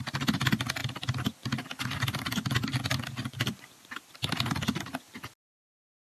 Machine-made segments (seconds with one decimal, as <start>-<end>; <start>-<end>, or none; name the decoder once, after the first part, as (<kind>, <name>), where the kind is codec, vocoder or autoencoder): none